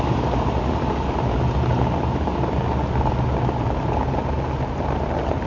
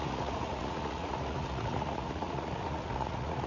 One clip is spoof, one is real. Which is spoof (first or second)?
second